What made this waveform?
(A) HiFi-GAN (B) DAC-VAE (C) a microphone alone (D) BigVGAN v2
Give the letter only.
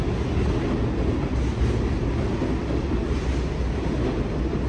C